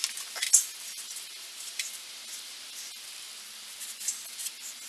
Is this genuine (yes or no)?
yes